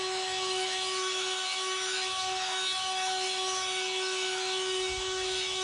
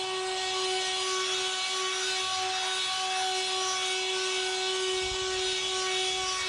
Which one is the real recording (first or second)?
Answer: second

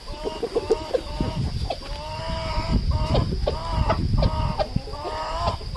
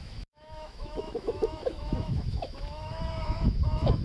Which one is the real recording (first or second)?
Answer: first